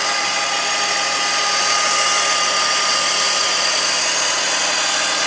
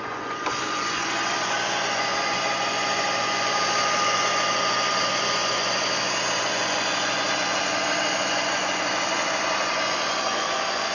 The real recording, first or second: first